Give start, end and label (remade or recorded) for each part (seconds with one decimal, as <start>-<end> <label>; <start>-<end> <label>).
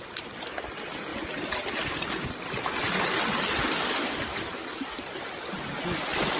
0.0-4.3 recorded; 4.3-4.8 remade; 4.8-6.4 recorded